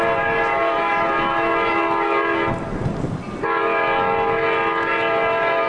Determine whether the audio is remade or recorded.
recorded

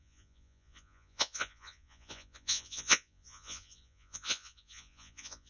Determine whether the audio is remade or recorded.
remade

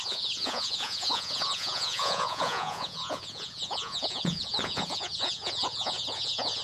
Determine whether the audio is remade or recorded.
remade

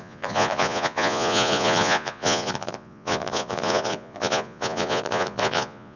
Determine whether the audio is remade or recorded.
remade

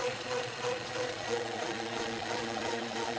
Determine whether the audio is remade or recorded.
remade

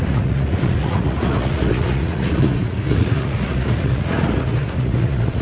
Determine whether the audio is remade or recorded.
remade